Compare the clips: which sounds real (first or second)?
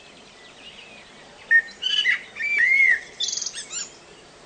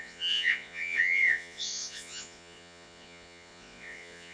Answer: first